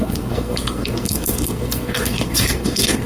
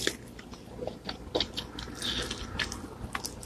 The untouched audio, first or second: second